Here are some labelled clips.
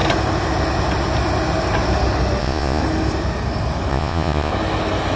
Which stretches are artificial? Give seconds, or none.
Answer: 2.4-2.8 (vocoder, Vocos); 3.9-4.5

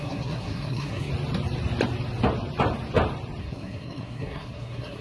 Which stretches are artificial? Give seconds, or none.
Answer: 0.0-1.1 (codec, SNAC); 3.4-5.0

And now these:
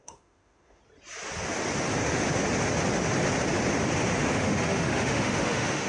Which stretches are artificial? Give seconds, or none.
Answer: 0.0-0.8 (autoencoder, DAC-VAE); 4.3-5.9

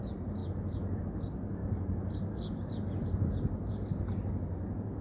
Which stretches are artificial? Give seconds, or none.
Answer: none